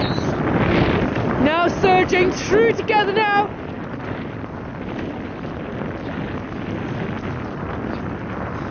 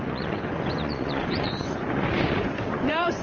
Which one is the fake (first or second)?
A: second